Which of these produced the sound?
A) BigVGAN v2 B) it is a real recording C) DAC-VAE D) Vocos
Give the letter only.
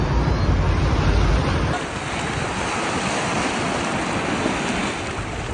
B